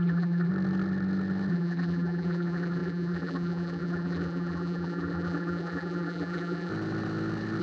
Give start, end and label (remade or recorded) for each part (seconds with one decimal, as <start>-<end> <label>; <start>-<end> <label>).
0.0-0.5 remade; 0.5-1.5 recorded; 1.5-6.7 remade; 6.7-7.6 recorded